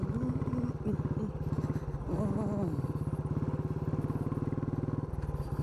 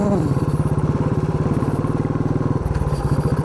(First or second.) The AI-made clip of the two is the second